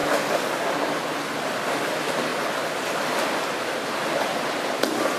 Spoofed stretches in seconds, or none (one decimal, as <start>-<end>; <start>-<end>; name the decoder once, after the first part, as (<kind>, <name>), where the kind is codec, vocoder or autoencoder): 0.0-1.0 (codec, DAC)